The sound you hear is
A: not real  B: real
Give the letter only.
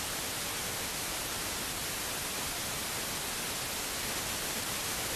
B